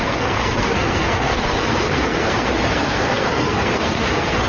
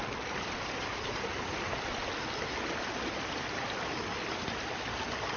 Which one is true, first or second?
second